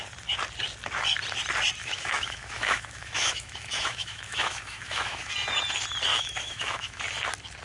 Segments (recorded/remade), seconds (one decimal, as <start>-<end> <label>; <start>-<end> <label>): 0.0-1.8 recorded; 1.8-5.3 remade; 5.3-6.1 recorded; 6.1-7.0 remade; 7.0-7.6 recorded